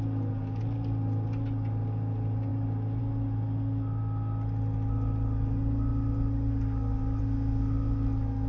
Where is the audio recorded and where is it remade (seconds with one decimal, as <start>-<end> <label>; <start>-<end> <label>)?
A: 0.0-8.5 recorded